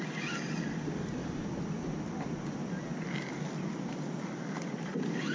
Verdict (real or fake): real